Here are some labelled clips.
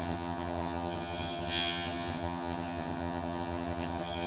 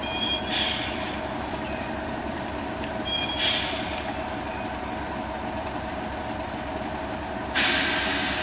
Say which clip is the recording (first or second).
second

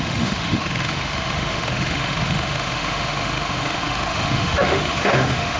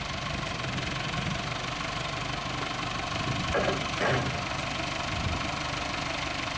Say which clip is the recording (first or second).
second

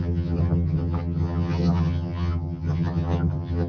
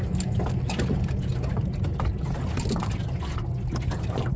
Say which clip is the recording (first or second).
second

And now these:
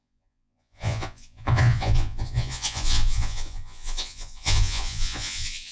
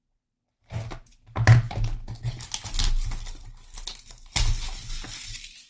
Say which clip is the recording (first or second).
second